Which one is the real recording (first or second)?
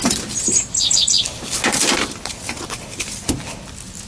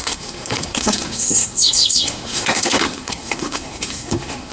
first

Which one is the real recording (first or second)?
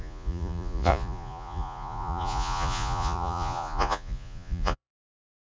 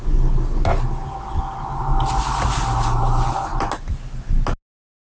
second